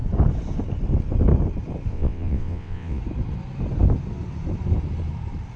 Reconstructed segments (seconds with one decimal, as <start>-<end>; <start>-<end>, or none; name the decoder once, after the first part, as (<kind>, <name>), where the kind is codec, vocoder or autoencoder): 1.9-3.0 (vocoder, WaveNeXt)